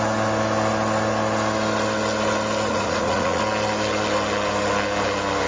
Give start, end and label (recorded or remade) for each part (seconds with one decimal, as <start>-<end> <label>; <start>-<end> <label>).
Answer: 0.0-2.7 recorded; 2.7-3.4 remade; 3.4-5.5 recorded